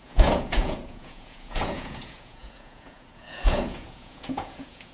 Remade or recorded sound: remade